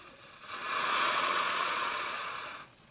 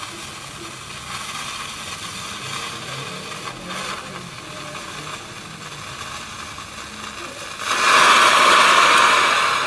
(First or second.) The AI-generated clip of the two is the first